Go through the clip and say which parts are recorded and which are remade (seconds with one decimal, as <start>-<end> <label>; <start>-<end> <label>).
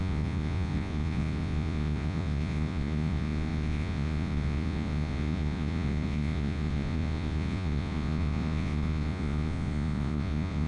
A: 0.0-10.7 remade